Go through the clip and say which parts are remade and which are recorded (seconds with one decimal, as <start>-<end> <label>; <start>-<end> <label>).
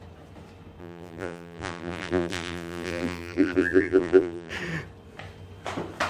0.0-0.8 recorded; 0.8-4.5 remade; 4.5-6.1 recorded